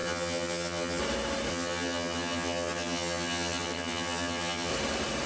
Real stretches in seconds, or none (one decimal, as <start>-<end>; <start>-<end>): 1.0-1.5; 4.7-5.3